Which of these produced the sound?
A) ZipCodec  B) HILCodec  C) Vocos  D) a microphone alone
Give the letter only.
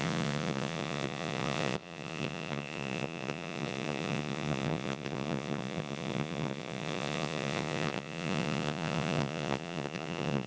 C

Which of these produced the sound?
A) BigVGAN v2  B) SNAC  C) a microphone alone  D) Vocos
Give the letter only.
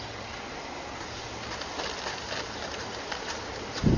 C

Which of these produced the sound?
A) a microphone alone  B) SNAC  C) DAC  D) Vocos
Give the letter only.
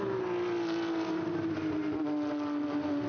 A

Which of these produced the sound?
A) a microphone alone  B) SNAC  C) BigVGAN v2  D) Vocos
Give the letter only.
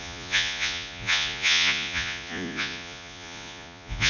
D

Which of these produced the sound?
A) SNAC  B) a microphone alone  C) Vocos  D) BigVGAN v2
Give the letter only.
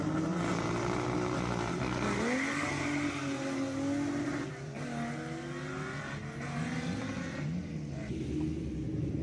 B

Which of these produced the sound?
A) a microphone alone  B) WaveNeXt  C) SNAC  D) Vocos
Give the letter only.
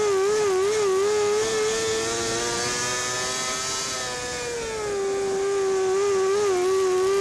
A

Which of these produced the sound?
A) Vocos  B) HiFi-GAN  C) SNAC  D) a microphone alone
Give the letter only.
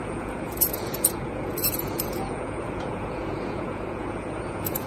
A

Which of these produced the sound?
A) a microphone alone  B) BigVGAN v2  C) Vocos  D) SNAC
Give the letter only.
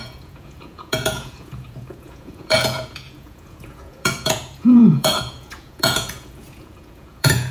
C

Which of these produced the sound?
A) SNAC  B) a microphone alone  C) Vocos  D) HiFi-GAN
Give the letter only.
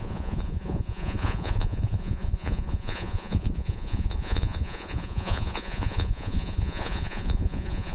C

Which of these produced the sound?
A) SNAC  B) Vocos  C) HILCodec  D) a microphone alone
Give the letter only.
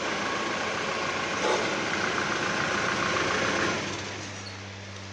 D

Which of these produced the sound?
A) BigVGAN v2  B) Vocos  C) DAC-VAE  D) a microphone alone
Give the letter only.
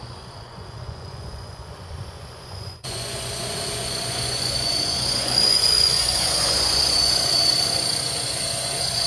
B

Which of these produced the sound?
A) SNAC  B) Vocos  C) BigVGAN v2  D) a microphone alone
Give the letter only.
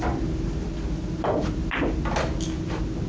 D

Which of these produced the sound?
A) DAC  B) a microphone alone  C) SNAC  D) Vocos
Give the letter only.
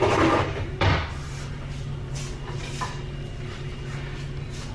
B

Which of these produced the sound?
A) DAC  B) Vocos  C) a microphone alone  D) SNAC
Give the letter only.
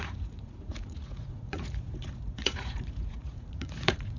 B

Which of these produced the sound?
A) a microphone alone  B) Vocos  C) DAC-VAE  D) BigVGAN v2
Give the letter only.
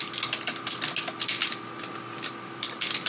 A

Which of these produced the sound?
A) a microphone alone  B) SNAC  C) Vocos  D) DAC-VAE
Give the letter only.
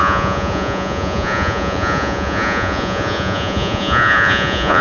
C